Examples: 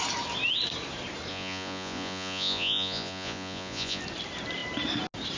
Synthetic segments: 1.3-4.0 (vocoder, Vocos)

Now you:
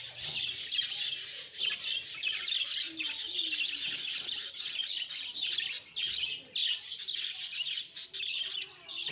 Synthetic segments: none

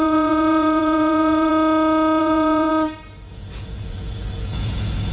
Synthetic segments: 0.0-1.5 (vocoder, Vocos); 2.2-2.7; 3.3-5.1